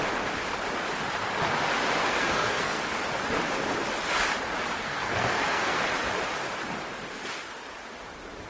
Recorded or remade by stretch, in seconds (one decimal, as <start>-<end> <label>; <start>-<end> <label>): 0.0-2.0 recorded; 2.0-2.8 remade; 2.8-4.8 recorded; 4.8-5.8 remade; 5.8-8.5 recorded